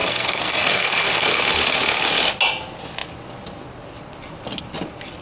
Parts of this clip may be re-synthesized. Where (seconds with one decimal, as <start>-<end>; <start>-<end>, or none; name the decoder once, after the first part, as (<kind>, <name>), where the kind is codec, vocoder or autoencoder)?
0.0-1.4 (codec, SNAC)